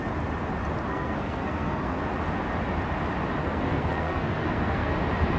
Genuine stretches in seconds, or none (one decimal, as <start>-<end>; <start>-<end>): 0.0-0.9; 2.0-3.4; 4.9-5.4

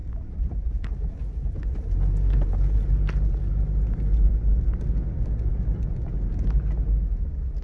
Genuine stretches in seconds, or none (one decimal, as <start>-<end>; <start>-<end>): 0.0-7.6

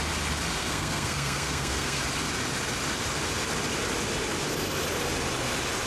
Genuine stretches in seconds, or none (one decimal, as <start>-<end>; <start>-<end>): 0.0-0.6; 2.0-5.9

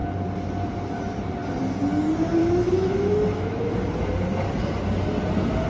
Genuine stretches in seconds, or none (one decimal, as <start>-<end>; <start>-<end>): 0.0-2.4; 3.7-5.7